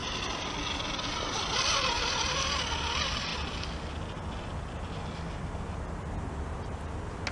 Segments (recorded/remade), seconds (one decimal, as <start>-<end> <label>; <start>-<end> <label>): 0.0-7.3 recorded